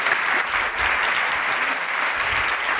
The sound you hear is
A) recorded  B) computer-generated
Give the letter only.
A